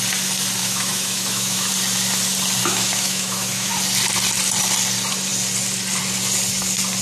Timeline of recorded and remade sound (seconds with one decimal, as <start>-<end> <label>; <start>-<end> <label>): 0.0-0.6 recorded; 0.6-1.7 remade; 1.7-2.6 recorded; 2.6-3.7 remade; 3.7-7.0 recorded